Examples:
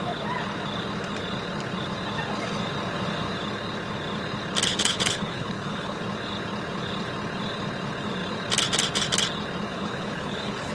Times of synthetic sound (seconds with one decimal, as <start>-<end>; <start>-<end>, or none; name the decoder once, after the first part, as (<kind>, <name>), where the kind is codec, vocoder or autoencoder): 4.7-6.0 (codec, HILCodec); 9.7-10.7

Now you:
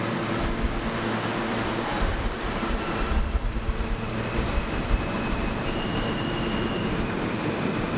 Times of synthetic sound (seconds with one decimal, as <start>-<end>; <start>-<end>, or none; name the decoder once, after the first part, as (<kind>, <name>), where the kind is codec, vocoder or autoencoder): 2.1-6.3 (vocoder, BigVGAN v2)

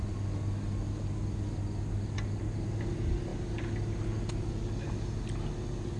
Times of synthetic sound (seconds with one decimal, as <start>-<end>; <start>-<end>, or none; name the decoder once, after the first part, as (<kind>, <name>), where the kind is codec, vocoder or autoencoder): none

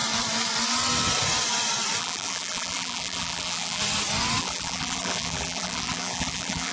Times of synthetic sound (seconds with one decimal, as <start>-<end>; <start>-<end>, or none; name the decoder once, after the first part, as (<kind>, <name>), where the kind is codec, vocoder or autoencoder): 2.0-3.8 (vocoder, BigVGAN v2); 4.4-6.7